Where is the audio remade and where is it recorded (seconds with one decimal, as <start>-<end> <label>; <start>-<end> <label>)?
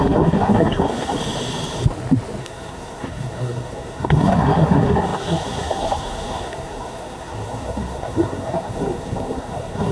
0.0-1.2 remade; 1.2-2.4 recorded; 2.4-9.9 remade